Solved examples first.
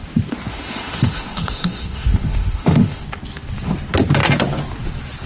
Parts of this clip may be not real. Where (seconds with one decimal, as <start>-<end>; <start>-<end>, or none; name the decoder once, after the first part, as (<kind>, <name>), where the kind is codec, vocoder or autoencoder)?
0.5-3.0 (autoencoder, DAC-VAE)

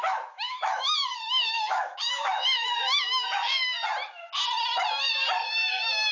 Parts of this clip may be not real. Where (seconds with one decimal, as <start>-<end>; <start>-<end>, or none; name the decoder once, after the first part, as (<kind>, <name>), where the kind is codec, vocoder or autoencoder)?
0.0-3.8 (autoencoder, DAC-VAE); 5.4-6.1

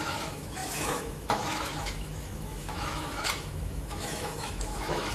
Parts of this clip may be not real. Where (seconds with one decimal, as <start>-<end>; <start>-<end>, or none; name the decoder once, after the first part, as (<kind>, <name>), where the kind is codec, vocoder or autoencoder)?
0.0-5.1 (autoencoder, DAC-VAE)

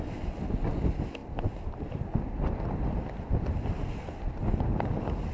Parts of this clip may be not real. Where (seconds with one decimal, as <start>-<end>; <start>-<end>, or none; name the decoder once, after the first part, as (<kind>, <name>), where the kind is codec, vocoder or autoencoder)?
none

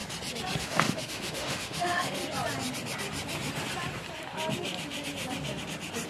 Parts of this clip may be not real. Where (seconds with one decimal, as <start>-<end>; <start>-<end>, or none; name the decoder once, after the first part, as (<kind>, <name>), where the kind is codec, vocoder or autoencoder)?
0.6-2.2 (autoencoder, DAC-VAE)

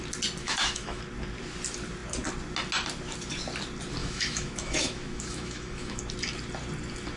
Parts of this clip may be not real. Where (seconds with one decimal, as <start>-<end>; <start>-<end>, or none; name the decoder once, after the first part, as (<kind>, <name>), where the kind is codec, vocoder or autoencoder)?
0.4-1.0 (autoencoder, DAC-VAE); 4.0-6.0

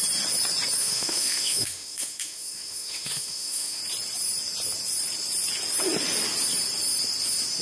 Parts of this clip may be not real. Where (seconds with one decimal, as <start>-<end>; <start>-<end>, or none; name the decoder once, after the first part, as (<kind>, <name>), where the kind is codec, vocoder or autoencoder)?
0.8-3.8 (autoencoder, DAC-VAE)